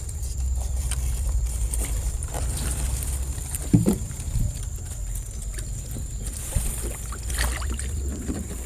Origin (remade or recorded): remade